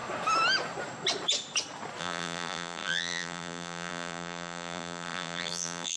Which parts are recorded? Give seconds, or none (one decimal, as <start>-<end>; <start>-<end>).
0.0-2.0